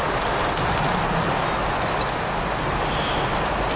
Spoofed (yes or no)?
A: no